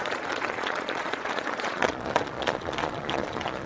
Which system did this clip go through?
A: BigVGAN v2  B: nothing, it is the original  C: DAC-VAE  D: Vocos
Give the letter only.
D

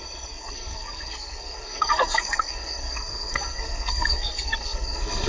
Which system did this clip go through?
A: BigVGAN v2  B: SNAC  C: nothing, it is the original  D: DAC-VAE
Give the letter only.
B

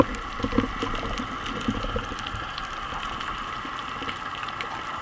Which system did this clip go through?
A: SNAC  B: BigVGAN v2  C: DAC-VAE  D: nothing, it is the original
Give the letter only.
D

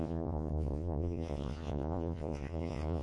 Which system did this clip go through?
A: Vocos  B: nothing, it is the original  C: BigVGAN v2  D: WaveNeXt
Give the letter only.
A